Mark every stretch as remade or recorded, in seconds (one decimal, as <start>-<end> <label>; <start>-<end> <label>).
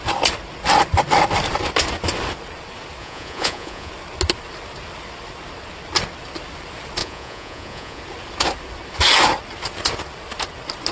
0.0-3.0 recorded; 3.0-3.9 remade; 3.9-7.0 recorded; 7.0-8.0 remade; 8.0-10.9 recorded